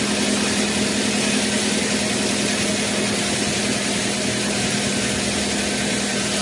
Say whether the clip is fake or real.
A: real